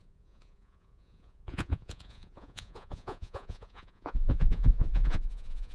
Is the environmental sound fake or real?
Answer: fake